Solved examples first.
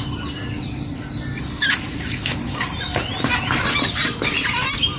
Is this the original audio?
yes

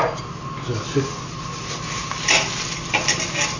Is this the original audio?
yes